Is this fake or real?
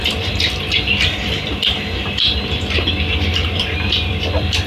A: fake